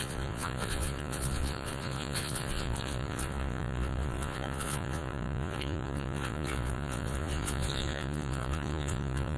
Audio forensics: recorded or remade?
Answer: remade